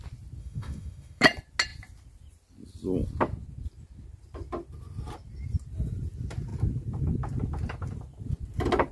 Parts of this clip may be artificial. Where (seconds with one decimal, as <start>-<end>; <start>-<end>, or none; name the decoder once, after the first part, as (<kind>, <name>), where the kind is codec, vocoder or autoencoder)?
0.4-1.2 (autoencoder, DAC-VAE)